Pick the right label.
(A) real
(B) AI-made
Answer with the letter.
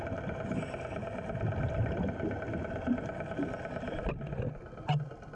A